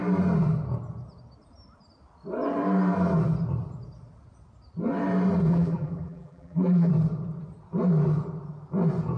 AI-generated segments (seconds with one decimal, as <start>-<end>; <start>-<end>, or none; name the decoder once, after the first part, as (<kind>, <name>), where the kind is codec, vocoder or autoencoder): 5.5-6.9 (vocoder, BigVGAN v2)